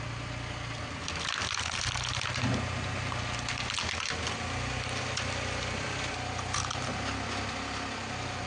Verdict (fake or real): real